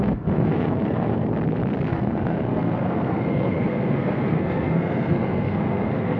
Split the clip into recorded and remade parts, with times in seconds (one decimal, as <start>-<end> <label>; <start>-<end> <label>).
0.0-1.3 remade; 1.3-1.9 recorded; 1.9-6.2 remade